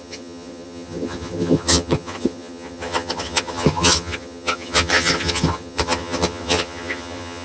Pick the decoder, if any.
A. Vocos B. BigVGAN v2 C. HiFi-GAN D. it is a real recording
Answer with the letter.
C